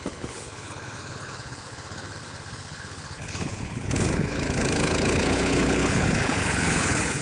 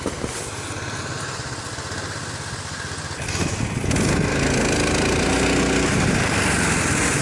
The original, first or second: second